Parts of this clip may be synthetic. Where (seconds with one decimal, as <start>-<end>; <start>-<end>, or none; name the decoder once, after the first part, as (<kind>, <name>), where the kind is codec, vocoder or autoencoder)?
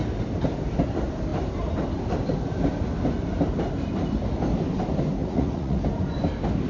5.2-5.8 (vocoder, Vocos)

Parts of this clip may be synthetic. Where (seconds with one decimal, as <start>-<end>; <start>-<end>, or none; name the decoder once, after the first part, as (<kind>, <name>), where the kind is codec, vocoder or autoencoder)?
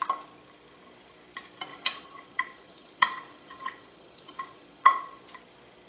1.7-5.2 (vocoder, Vocos)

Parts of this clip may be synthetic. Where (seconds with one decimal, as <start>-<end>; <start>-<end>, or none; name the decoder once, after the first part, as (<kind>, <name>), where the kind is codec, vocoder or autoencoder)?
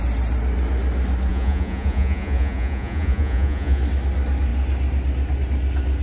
1.3-3.8 (vocoder, Vocos)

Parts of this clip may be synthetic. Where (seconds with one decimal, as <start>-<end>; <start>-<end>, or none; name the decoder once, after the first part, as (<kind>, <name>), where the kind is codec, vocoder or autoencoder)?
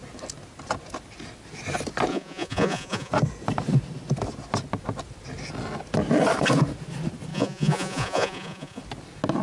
2.1-3.1 (vocoder, Vocos); 7.3-8.8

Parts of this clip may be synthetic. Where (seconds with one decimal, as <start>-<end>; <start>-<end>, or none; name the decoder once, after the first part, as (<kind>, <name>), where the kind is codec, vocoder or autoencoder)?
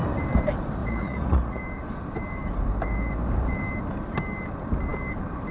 0.8-1.6 (vocoder, Vocos)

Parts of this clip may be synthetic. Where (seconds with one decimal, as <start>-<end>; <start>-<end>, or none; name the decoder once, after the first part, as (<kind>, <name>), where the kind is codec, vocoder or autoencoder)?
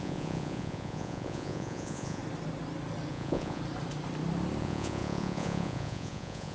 0.0-2.2 (vocoder, Vocos); 3.1-3.6; 4.6-6.5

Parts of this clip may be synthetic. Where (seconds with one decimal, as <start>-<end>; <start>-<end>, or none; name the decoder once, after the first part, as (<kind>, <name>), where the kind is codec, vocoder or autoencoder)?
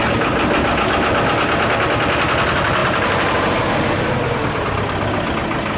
none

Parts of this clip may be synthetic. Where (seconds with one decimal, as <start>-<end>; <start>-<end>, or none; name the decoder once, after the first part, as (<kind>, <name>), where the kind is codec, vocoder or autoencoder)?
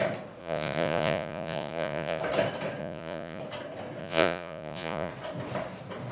0.4-2.2 (vocoder, Vocos); 2.8-3.4; 4.0-5.1